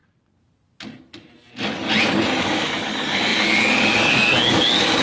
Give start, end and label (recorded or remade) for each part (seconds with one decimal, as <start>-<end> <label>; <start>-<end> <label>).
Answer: 0.0-2.4 recorded; 2.4-5.0 remade